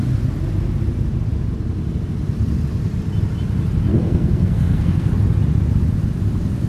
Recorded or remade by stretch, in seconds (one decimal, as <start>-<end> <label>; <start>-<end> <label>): 0.0-3.9 recorded; 3.9-5.1 remade; 5.1-6.7 recorded